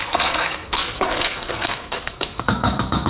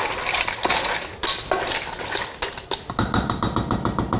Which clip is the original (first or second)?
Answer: second